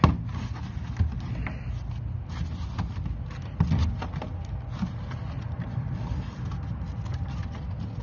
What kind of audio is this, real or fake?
real